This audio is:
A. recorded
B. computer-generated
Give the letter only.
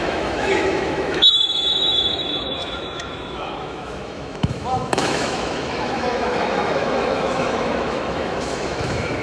B